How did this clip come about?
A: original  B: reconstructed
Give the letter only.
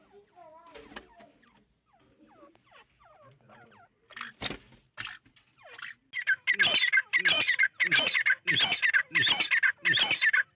A